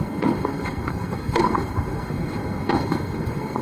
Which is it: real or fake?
fake